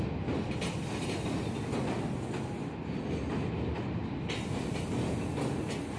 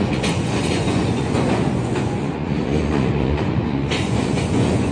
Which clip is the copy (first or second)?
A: second